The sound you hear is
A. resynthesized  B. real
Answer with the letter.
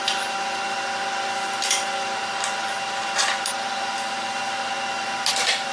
B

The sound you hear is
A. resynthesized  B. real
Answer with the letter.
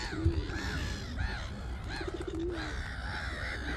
B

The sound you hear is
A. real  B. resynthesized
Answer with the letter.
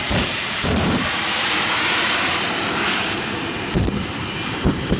B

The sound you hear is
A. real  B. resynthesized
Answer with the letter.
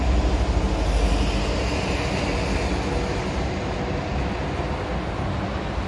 A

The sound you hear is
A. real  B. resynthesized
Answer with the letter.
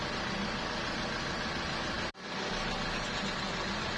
A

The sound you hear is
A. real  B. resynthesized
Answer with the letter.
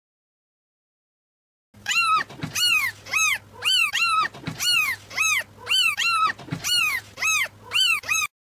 A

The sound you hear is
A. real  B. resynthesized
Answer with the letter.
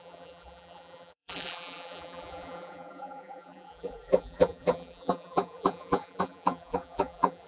B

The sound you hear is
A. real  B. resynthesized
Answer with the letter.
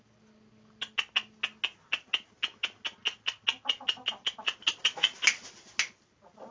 A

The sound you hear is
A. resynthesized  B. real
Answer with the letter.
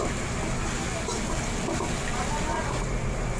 B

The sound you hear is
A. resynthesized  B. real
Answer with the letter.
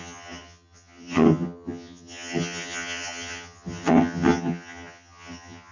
A